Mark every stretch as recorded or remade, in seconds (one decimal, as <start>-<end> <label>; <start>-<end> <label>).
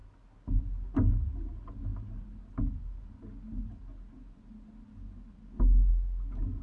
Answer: 0.0-6.6 recorded